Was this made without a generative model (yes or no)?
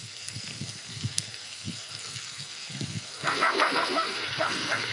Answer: no